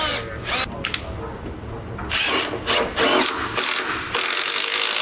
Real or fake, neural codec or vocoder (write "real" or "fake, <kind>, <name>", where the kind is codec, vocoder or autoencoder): real